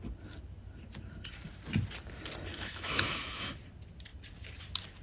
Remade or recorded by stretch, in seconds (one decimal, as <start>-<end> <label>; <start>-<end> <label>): 0.0-2.5 recorded; 2.5-3.5 remade; 3.5-5.0 recorded